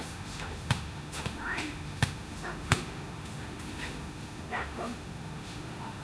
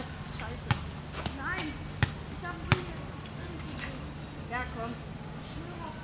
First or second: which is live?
second